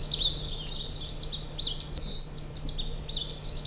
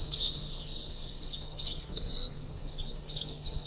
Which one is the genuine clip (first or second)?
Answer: first